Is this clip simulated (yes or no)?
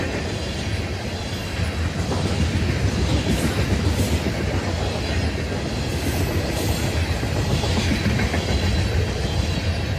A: no